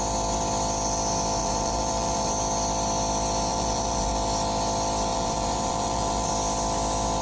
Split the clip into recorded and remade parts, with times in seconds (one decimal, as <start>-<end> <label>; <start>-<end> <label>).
0.0-1.4 recorded; 1.4-2.3 remade; 2.3-3.5 recorded; 3.5-4.1 remade; 4.1-5.1 recorded; 5.1-6.3 remade; 6.3-7.2 recorded